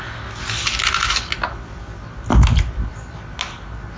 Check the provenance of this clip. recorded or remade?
recorded